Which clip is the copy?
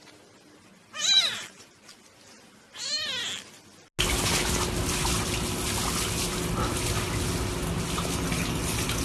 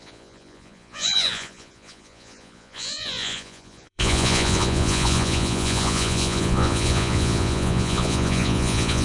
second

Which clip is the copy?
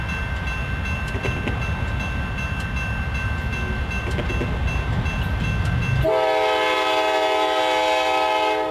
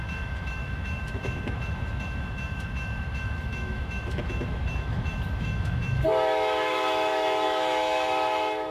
second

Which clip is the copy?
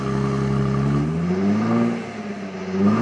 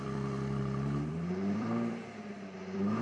second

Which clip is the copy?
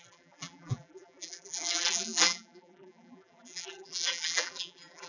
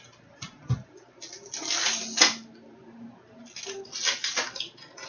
first